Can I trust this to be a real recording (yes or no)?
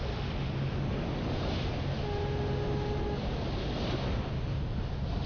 yes